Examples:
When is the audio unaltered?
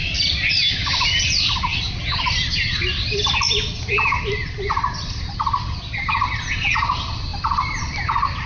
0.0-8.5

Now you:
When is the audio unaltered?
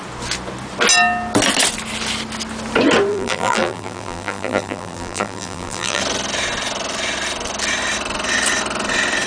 0.0-3.1; 6.0-9.3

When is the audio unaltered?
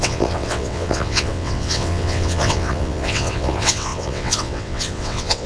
none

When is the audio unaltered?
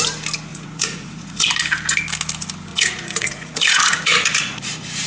0.0-0.5; 1.5-2.7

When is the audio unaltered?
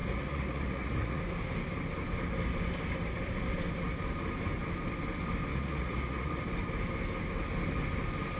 1.2-5.5; 6.4-8.4